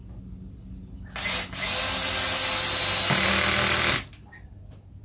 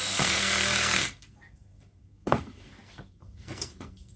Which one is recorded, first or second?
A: first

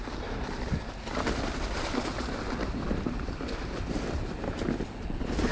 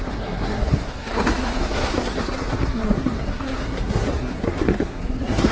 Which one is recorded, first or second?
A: first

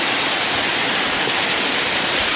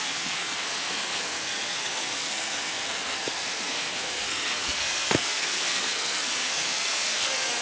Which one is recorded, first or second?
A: first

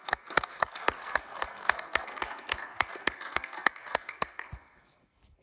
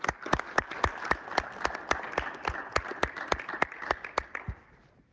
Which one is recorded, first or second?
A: second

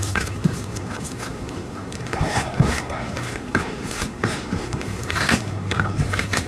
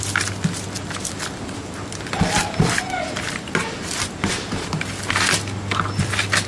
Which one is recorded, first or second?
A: second